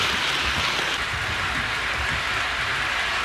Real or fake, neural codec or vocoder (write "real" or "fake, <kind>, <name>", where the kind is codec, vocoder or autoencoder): real